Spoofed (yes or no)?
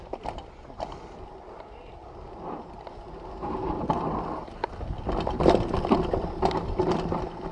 no